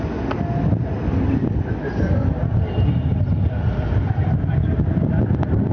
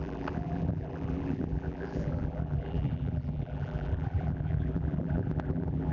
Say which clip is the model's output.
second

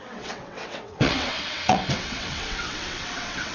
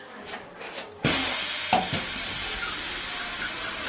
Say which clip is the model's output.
first